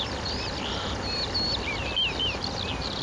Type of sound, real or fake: real